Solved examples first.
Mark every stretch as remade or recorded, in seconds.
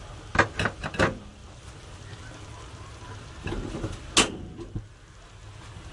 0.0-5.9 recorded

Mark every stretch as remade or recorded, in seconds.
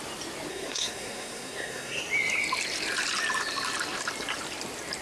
0.0-0.5 recorded; 0.5-2.0 remade; 2.0-5.0 recorded